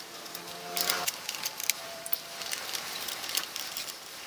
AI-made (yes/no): yes